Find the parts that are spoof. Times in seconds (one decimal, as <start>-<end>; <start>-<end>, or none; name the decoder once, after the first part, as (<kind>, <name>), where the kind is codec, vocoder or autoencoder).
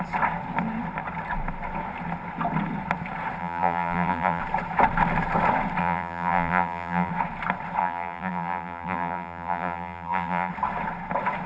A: 3.4-4.4 (vocoder, BigVGAN v2); 5.8-7.1; 7.8-10.5